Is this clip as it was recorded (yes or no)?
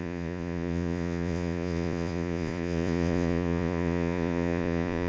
no